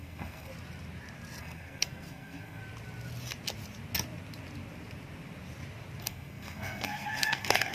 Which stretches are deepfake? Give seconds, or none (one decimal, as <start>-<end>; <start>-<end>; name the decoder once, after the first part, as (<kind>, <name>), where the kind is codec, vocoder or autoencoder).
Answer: 0.0-0.5 (codec, SNAC); 1.4-2.6; 6.0-7.7